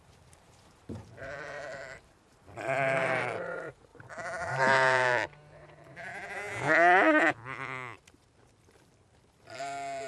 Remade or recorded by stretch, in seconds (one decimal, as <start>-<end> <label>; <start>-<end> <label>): 0.0-6.1 remade; 6.1-9.6 recorded; 9.6-10.1 remade